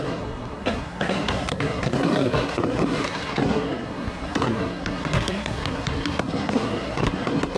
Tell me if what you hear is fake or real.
fake